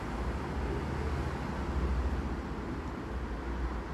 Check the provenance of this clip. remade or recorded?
recorded